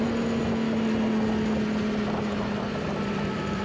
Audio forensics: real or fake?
real